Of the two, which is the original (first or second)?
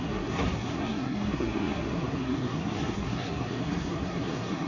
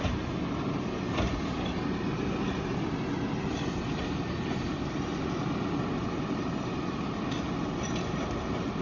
second